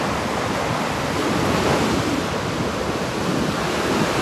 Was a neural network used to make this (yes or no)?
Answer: no